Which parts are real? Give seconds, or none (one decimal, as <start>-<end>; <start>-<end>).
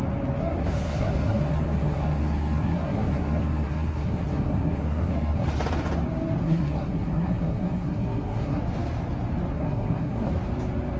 0.0-0.4; 5.5-6.4; 8.6-9.5; 10.3-11.0